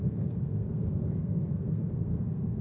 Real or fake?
fake